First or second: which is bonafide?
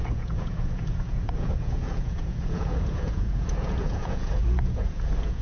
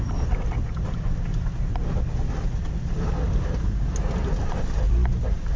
second